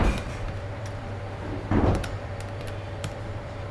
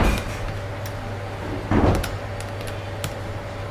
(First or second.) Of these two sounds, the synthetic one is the first